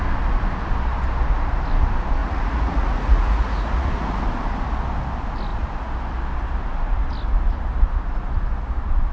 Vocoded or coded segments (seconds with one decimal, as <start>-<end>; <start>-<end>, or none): 2.2-4.2